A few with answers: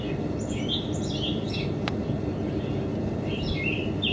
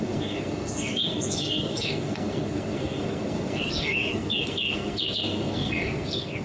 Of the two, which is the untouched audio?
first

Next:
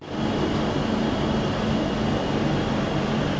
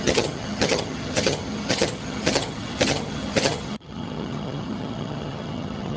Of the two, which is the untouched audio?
first